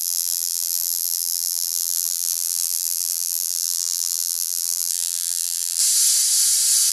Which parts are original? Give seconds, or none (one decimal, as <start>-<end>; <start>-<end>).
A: 5.8-6.9